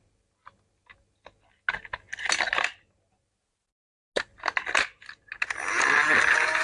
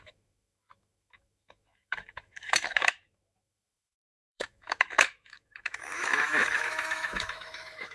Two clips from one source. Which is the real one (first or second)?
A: first